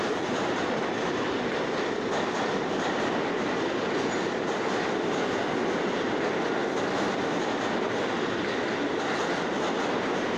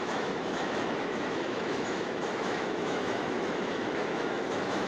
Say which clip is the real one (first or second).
first